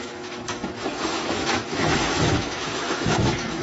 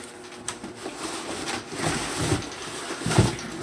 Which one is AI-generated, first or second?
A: first